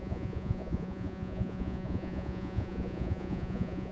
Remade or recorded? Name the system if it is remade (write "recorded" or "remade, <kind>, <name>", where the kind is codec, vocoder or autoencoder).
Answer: remade, vocoder, Vocos